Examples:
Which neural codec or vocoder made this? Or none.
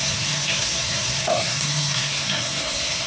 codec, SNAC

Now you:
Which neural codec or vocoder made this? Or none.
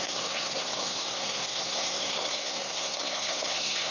codec, SNAC